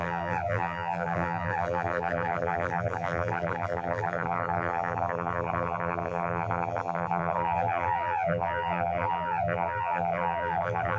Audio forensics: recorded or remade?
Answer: remade